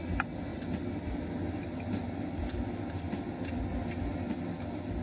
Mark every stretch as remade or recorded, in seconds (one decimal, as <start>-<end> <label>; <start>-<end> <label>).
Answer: 0.0-5.0 recorded

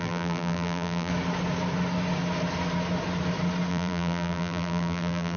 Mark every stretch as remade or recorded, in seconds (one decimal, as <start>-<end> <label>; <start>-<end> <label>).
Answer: 0.0-1.1 remade; 1.1-3.7 recorded; 3.7-5.4 remade